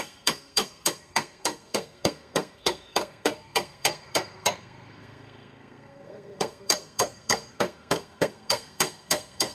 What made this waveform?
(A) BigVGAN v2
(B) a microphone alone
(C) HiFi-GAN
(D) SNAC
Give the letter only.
D